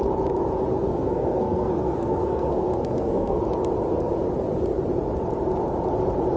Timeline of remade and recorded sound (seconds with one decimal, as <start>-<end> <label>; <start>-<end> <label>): 0.0-0.7 recorded; 0.7-3.4 remade; 3.4-6.4 recorded